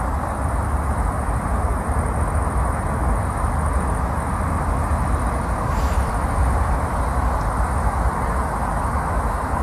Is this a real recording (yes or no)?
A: yes